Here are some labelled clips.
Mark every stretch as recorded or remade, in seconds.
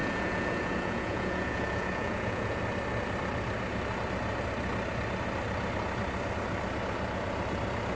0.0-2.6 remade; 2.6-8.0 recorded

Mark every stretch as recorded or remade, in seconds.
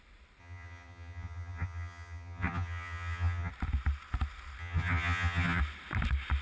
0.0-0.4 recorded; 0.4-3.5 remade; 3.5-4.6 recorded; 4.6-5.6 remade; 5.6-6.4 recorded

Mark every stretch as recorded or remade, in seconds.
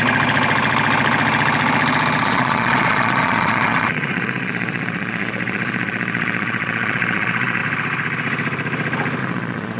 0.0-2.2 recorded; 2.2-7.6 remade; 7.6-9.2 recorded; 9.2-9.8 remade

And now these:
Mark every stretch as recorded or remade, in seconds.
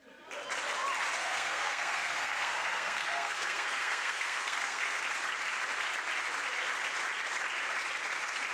0.0-1.2 recorded; 1.2-5.0 remade; 5.0-8.5 recorded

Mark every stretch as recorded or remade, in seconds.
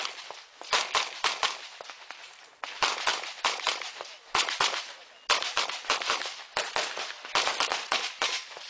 0.0-3.1 recorded; 3.1-4.8 remade; 4.8-7.7 recorded; 7.7-8.7 remade